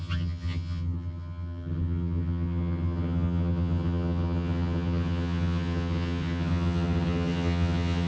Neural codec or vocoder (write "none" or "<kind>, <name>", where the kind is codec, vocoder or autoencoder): vocoder, HiFi-GAN